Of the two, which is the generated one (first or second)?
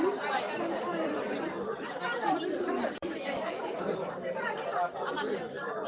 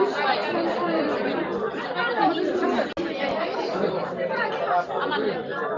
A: first